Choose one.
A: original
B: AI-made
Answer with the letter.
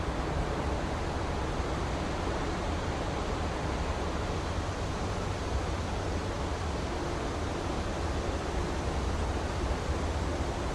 A